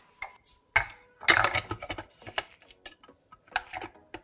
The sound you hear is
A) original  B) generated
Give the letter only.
A